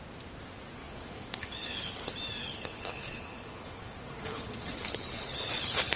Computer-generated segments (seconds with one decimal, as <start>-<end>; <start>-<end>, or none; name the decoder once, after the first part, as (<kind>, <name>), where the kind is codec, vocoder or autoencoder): 0.8-1.9 (codec, HILCodec); 2.4-6.0